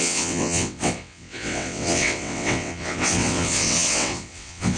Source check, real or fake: fake